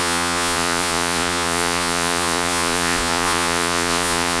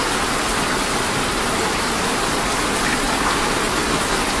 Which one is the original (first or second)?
second